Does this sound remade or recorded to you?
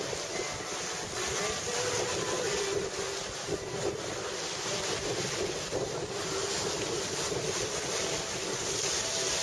recorded